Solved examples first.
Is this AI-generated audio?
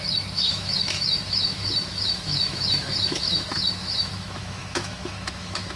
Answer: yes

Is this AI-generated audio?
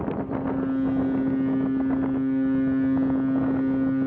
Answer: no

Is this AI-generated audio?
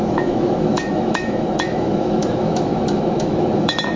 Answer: yes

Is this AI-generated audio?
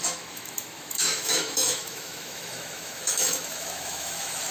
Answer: yes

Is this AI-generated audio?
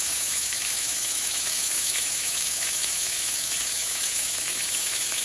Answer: yes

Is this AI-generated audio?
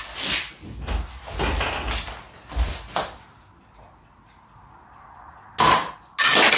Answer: no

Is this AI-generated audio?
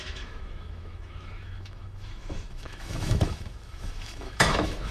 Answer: yes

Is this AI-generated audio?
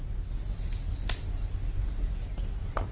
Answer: no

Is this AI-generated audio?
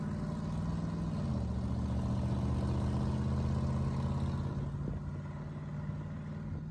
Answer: no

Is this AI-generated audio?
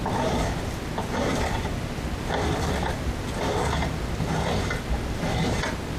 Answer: no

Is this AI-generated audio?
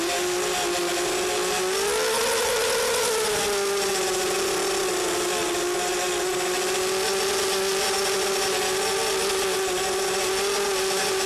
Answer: no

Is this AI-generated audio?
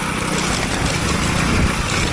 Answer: no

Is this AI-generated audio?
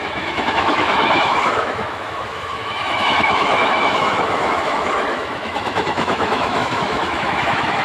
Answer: yes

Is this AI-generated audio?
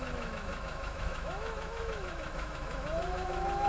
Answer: yes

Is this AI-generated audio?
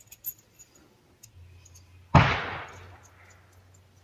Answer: no